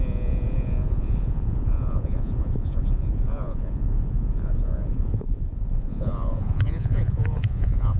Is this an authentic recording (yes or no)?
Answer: no